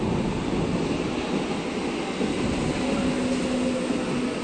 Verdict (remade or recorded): recorded